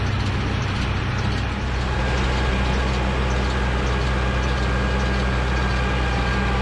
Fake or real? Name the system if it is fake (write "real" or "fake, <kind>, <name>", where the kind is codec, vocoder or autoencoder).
real